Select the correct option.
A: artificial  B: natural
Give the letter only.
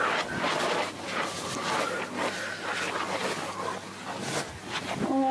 B